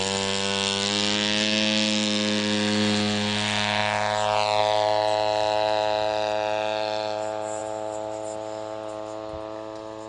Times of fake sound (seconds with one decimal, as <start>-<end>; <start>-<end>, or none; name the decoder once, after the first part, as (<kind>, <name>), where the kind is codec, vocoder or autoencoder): none